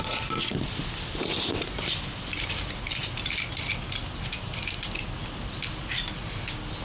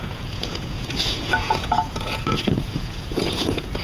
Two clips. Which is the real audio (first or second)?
first